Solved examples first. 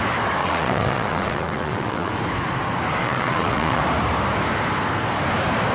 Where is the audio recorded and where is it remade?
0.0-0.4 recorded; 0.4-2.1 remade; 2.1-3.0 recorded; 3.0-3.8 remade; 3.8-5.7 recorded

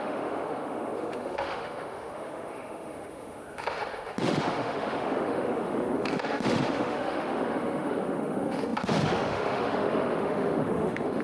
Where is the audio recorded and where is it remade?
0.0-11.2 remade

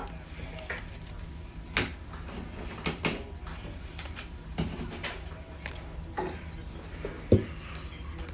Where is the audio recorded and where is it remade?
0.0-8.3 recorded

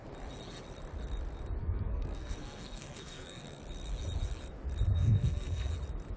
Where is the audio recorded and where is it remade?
0.0-1.6 recorded; 1.6-3.6 remade; 3.6-4.9 recorded; 4.9-5.7 remade; 5.7-6.2 recorded